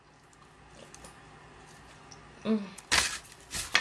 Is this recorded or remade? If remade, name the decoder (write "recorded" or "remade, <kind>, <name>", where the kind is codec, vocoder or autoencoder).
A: recorded